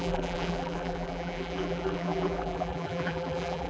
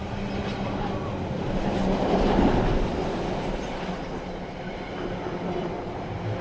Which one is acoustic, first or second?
second